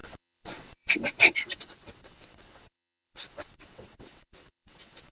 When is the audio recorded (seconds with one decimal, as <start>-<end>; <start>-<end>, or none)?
none